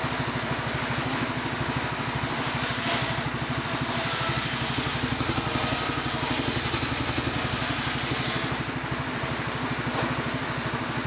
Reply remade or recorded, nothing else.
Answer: recorded